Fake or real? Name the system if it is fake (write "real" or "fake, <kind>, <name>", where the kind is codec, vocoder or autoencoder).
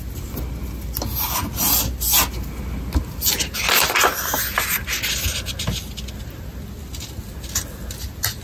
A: real